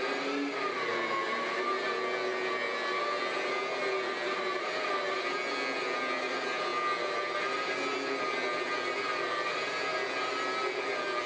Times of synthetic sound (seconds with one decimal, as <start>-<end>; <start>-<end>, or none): none